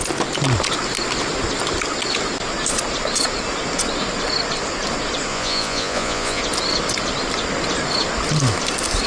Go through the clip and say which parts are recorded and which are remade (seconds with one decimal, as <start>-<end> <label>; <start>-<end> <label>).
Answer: 0.0-5.3 recorded; 5.3-6.4 remade; 6.4-9.1 recorded